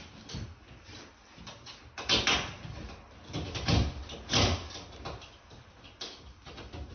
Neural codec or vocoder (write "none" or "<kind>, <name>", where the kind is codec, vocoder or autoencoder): none